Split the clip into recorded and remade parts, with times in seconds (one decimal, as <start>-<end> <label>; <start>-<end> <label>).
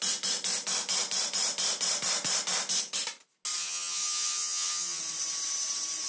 0.0-3.6 recorded; 3.6-5.0 remade; 5.0-6.1 recorded